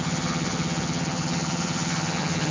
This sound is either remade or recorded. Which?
remade